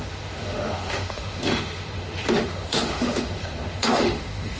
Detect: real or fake fake